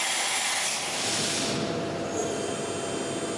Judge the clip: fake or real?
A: real